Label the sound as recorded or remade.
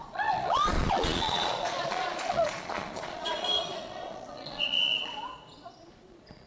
remade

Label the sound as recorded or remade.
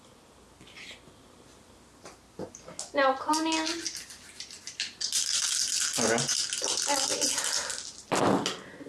recorded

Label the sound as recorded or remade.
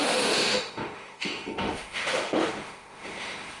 remade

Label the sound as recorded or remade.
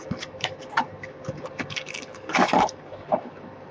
remade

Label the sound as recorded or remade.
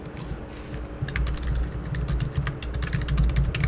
recorded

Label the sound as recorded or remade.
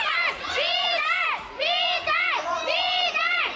remade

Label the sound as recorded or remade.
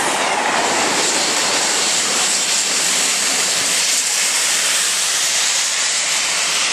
remade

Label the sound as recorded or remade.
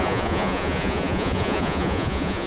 remade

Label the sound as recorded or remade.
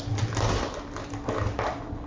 recorded